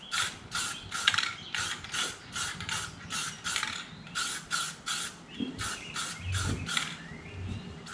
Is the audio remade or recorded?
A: recorded